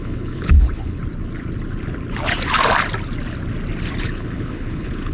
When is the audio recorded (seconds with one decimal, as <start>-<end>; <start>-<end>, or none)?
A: 1.0-4.0